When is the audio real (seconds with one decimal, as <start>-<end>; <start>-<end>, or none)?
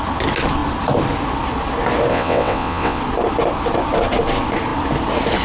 0.0-2.1; 3.0-5.4